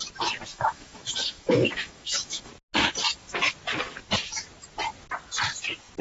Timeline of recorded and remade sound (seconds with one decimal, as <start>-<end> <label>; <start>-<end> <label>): 0.0-0.5 recorded; 0.5-2.5 remade; 2.5-6.0 recorded